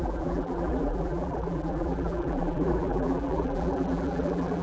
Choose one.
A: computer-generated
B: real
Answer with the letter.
A